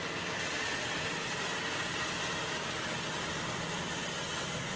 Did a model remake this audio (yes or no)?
no